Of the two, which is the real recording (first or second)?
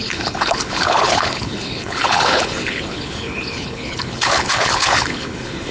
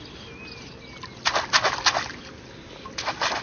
second